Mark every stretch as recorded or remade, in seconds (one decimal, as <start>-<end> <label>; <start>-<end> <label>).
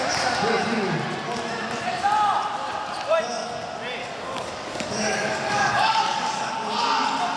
0.0-4.0 recorded; 4.0-6.5 remade; 6.5-7.4 recorded